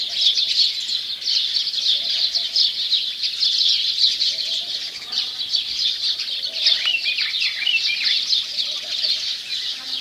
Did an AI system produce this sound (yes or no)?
no